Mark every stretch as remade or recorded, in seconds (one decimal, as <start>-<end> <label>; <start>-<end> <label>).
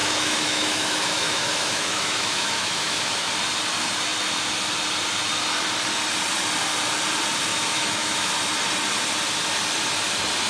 0.0-3.3 remade; 3.3-7.5 recorded; 7.5-8.3 remade; 8.3-10.5 recorded